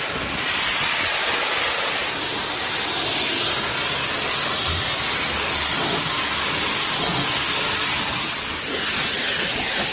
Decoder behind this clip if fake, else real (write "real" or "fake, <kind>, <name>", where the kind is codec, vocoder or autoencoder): real